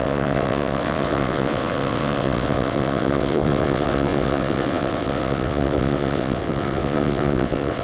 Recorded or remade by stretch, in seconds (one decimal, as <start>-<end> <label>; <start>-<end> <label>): 0.0-7.8 remade